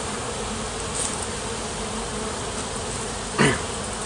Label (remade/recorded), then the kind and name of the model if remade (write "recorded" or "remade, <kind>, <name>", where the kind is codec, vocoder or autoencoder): recorded